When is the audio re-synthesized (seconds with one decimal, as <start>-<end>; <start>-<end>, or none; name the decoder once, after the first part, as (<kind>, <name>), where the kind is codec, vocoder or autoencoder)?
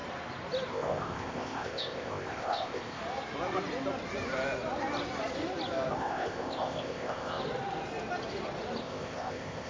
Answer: 0.7-3.0 (codec, ZipCodec); 5.9-7.4; 8.8-9.7